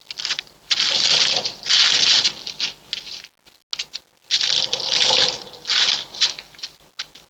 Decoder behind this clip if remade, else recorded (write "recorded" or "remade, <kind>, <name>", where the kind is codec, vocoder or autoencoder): recorded